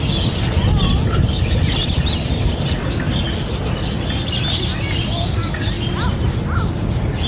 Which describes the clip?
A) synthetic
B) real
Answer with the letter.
B